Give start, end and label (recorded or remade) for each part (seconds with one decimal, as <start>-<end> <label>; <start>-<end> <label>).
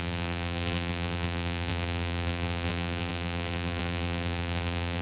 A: 0.0-5.0 remade